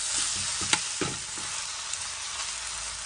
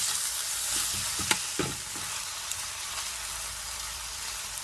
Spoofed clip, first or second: second